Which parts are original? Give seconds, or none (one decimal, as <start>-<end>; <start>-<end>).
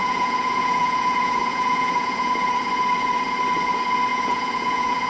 2.3-4.1